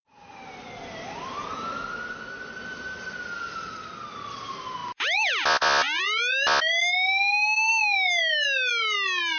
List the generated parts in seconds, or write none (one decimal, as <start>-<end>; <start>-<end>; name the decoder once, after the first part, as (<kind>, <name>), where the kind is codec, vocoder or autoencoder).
none